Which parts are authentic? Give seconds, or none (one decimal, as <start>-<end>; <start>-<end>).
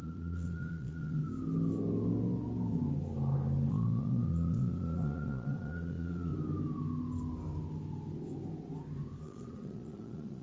1.2-3.7; 6.3-9.2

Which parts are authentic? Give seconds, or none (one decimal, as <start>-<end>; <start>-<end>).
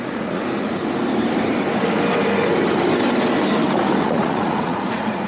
0.8-4.0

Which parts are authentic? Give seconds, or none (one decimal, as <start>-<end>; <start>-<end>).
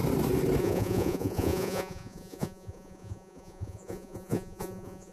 0.0-0.6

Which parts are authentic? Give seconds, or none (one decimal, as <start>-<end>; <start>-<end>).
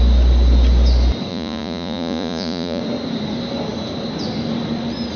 0.0-1.3; 2.8-5.2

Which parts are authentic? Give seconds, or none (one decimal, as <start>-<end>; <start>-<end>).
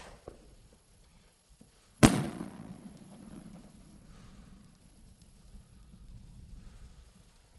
none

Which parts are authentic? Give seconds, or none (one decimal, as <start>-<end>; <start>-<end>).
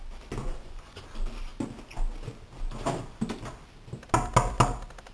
0.0-0.4; 1.0-5.1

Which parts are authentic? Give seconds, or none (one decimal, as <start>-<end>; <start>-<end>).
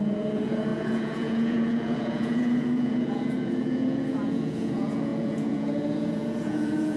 none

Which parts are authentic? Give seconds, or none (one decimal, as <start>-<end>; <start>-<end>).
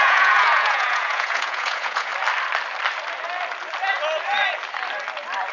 2.1-5.5